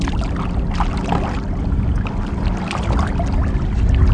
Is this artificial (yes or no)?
no